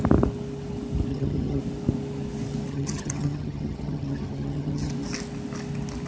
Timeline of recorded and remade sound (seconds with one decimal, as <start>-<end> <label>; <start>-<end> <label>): 0.0-1.1 recorded; 1.1-1.6 remade; 1.6-2.7 recorded; 2.7-4.9 remade; 4.9-6.1 recorded